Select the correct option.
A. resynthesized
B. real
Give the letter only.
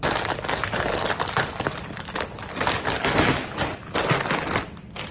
B